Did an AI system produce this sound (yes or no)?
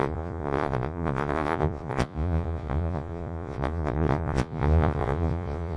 yes